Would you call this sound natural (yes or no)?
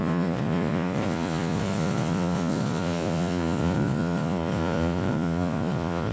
no